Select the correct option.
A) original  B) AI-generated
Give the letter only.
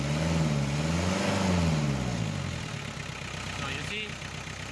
A